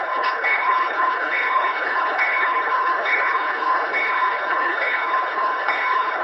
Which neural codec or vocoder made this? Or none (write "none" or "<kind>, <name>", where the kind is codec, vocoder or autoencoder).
codec, HILCodec